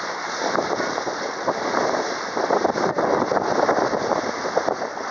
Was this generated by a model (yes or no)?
no